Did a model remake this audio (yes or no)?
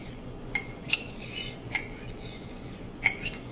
yes